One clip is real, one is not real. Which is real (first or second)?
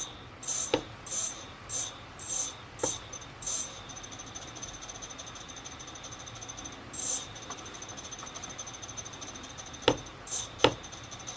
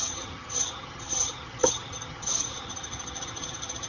first